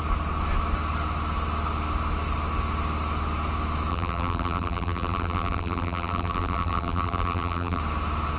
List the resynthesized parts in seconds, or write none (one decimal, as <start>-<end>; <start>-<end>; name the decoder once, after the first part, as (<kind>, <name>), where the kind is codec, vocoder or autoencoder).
3.9-7.8 (vocoder, BigVGAN v2)

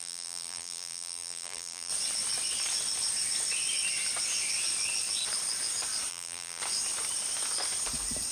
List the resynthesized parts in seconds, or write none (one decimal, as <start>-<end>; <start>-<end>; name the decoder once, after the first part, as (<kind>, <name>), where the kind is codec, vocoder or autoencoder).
0.0-1.9 (vocoder, BigVGAN v2); 6.1-6.6